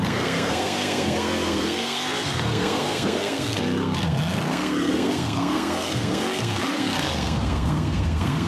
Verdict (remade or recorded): remade